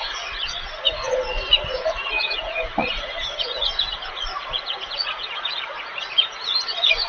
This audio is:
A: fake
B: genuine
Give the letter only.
A